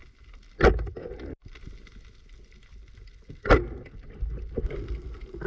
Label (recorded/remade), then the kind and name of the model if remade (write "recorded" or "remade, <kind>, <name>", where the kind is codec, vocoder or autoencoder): recorded